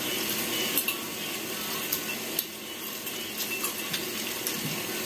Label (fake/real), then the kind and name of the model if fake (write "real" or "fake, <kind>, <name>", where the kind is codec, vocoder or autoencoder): real